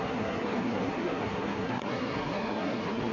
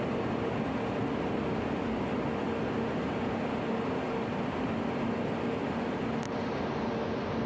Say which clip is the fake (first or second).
first